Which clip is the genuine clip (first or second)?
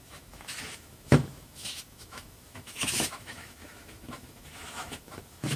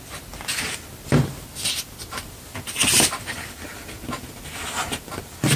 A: second